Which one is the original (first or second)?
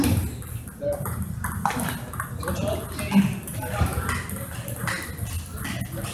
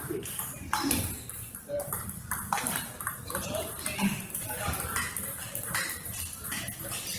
first